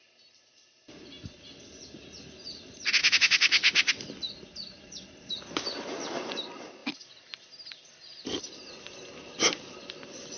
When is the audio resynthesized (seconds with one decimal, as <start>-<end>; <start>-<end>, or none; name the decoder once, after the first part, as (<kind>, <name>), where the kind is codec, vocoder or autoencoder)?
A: 3.0-3.9 (autoencoder, DAC-VAE)